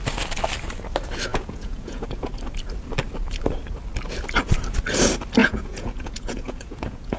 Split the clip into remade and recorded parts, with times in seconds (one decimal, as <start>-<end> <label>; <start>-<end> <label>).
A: 0.0-1.3 recorded; 1.3-2.3 remade; 2.3-5.4 recorded; 5.4-7.2 remade